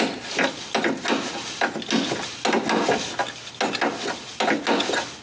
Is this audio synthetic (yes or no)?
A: no